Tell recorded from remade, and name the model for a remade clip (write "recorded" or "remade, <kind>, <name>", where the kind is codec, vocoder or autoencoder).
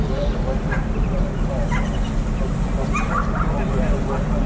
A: recorded